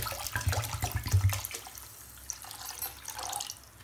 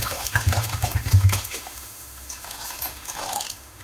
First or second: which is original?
first